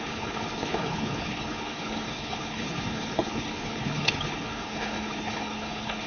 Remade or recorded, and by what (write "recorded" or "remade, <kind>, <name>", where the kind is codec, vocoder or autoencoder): remade, codec, HILCodec